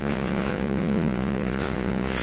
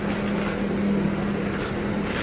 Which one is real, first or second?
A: second